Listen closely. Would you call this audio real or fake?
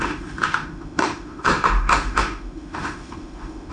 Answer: fake